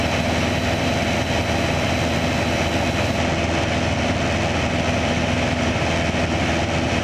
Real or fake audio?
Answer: real